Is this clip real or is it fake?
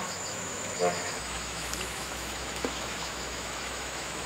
fake